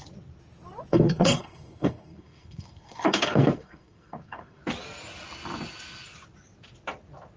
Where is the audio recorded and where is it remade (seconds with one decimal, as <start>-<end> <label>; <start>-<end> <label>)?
0.0-0.9 recorded; 0.9-4.6 remade; 4.6-7.4 recorded

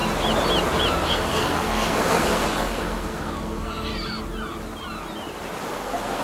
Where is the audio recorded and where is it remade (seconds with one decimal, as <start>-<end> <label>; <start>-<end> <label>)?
0.0-1.1 recorded; 1.1-3.9 remade; 3.9-5.7 recorded; 5.7-6.2 remade

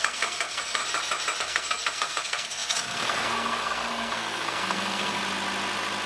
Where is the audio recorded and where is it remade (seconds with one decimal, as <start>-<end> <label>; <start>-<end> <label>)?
0.0-0.8 remade; 0.8-1.4 recorded; 1.4-5.2 remade; 5.2-6.1 recorded

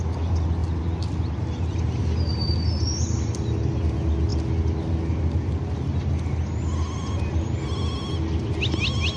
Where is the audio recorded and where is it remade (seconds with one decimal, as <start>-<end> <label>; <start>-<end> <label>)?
0.0-9.2 recorded

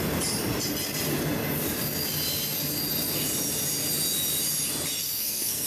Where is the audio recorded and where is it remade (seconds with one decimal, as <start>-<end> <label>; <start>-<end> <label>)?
0.0-5.0 recorded; 5.0-5.7 remade

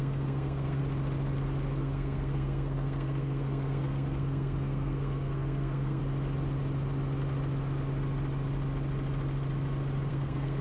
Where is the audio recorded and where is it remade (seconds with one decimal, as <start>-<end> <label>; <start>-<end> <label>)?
0.0-0.8 remade; 0.8-1.8 recorded; 1.8-6.0 remade; 6.0-10.1 recorded; 10.1-10.6 remade

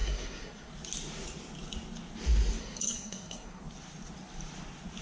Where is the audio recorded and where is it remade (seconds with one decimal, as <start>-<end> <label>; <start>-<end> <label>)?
0.0-0.7 remade; 0.7-2.6 recorded; 2.6-3.6 remade; 3.6-5.0 recorded